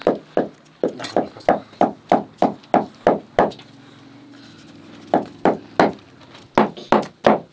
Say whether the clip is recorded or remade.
recorded